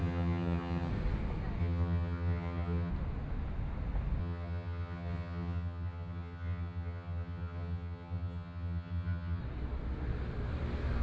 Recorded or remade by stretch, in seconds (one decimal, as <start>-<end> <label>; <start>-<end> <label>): 0.0-0.9 remade; 0.9-1.6 recorded; 1.6-2.9 remade; 2.9-4.2 recorded; 4.2-9.4 remade; 9.4-11.0 recorded